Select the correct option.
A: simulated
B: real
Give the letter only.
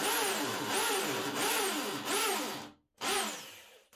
B